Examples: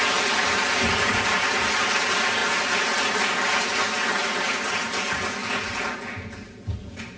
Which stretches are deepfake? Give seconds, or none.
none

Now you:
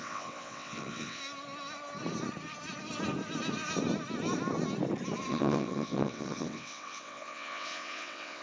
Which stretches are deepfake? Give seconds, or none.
0.0-1.2 (vocoder, WaveNeXt); 5.3-8.4